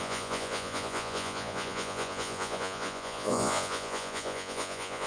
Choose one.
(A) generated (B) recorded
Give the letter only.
A